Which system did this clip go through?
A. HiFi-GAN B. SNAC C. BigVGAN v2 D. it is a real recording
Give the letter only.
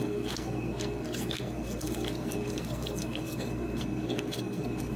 B